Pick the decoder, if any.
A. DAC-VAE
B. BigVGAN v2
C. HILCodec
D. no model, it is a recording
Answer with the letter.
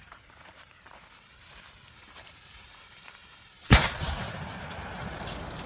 B